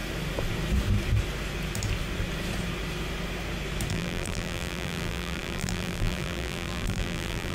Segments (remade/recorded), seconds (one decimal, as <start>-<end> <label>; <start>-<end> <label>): 0.0-3.9 recorded; 3.9-7.5 remade